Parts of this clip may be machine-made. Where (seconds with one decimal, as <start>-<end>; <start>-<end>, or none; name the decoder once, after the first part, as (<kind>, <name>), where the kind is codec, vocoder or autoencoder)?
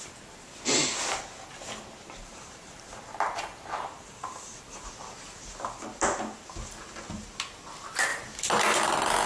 2.2-4.9 (vocoder, BigVGAN v2)